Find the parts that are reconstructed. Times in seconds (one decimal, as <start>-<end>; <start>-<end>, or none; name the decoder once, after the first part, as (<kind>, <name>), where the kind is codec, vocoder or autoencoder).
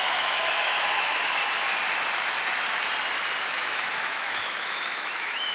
0.0-1.4 (autoencoder, DAC-VAE); 3.4-5.5